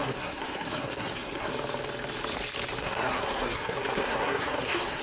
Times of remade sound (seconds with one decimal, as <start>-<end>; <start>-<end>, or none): 0.0-1.5; 2.8-5.0